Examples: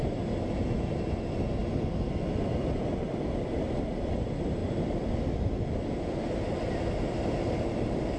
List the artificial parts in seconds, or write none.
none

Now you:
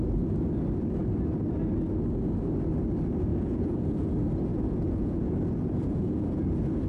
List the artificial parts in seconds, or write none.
3.3-4.1 (vocoder, Vocos); 4.5-6.4